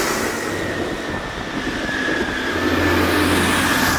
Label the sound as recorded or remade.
recorded